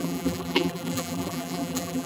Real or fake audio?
fake